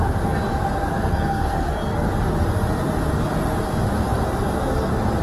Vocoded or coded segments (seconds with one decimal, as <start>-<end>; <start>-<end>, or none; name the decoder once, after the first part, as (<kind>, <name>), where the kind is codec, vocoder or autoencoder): 0.8-2.1 (codec, SNAC)